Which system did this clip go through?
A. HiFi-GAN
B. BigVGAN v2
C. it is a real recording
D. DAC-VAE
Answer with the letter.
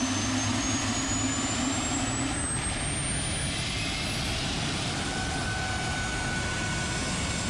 C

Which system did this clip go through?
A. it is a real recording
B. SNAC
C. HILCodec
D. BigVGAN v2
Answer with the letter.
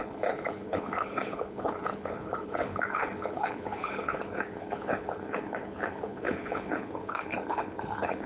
C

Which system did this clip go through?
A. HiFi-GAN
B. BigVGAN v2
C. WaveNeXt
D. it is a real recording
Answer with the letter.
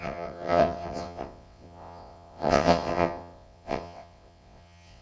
C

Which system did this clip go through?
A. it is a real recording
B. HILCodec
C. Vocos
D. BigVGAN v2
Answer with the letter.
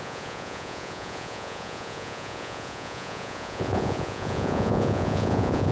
C